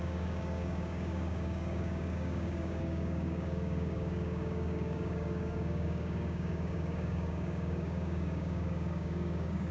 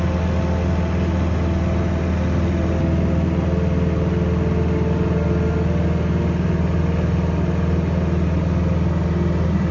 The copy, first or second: first